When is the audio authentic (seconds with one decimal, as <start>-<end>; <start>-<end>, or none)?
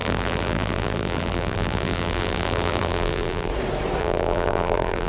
3.5-4.0